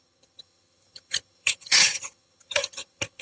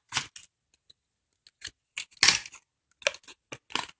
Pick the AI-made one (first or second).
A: first